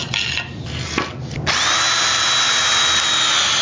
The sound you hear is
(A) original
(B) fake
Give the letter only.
A